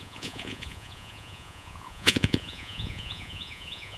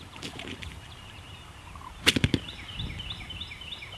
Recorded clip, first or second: second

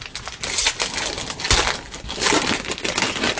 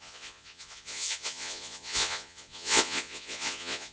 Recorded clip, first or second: first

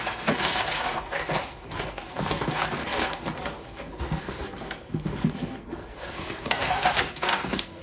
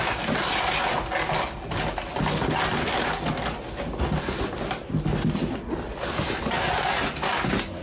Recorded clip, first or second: second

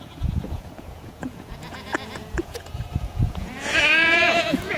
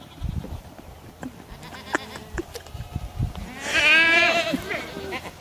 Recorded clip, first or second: second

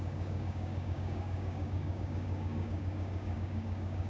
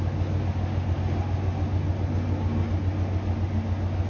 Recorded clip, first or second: second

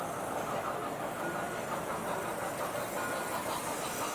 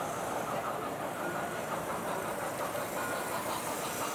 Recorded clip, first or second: first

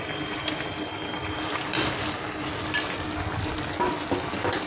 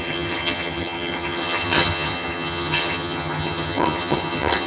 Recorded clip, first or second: first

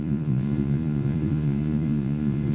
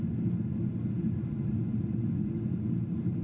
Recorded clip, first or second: second